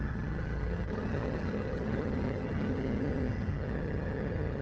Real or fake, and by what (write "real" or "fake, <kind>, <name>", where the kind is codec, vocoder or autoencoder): fake, vocoder, HiFi-GAN